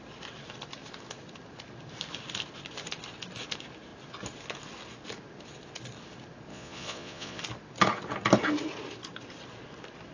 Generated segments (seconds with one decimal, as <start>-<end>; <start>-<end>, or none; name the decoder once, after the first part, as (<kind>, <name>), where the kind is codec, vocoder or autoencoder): 6.5-7.4 (vocoder, Vocos)